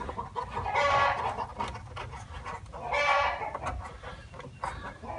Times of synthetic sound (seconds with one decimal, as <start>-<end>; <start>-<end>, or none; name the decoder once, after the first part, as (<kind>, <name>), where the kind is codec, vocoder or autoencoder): none